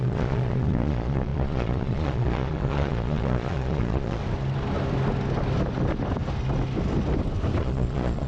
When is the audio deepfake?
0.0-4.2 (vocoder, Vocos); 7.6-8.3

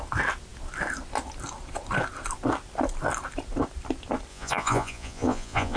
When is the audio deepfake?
4.3-5.8 (vocoder, Vocos)

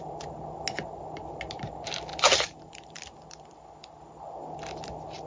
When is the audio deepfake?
2.1-4.6 (vocoder, BigVGAN v2)

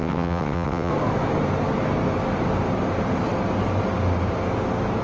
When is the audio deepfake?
0.0-0.9 (vocoder, WaveNeXt)

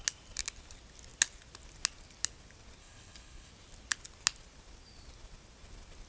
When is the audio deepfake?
2.8-3.5 (codec, HILCodec)

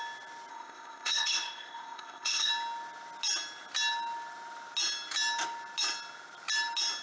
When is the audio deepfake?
0.5-2.5 (codec, ZipCodec)